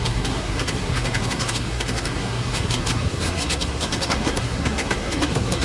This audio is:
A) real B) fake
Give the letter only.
B